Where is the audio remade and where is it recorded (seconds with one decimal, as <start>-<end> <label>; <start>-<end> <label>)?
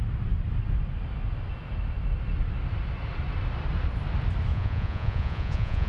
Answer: 0.0-4.5 recorded; 4.5-5.9 remade